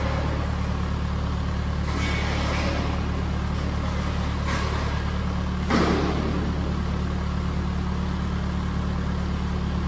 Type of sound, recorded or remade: recorded